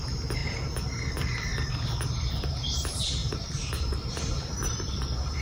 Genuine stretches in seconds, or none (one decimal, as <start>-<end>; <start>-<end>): 0.4-1.1; 1.5-2.3